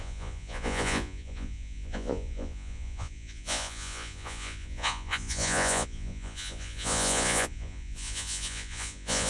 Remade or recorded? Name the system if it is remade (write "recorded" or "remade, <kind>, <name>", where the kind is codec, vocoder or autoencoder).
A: remade, vocoder, Vocos